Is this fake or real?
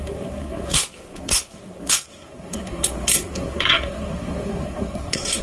fake